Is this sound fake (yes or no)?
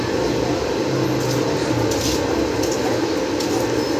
no